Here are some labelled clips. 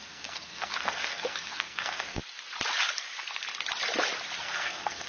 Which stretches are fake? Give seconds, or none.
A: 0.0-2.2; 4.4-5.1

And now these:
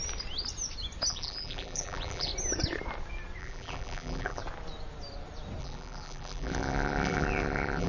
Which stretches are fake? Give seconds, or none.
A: 1.1-2.3; 3.4-4.4; 5.6-7.9